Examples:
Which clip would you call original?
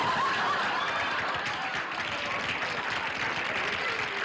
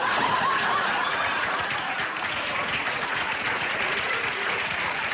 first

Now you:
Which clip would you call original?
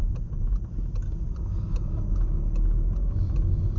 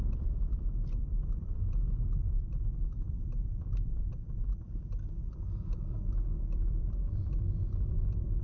first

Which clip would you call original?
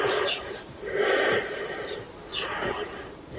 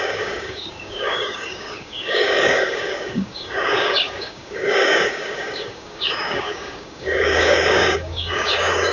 first